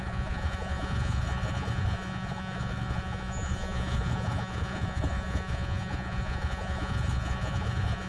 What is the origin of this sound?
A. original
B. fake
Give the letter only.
B